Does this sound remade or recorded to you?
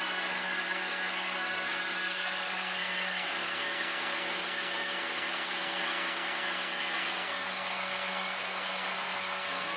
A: remade